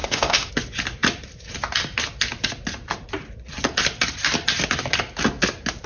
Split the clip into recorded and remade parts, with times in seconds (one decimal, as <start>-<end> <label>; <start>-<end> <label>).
0.0-0.5 remade; 0.5-5.9 recorded